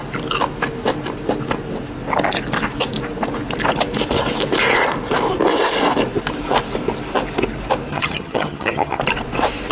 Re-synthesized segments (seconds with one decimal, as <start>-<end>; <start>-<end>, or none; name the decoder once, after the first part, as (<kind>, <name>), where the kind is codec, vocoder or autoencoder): 7.9-9.0 (vocoder, HiFi-GAN)